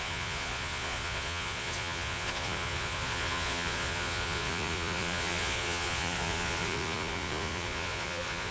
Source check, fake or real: fake